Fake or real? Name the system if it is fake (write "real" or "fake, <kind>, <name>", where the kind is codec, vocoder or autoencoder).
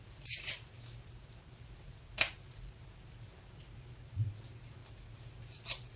real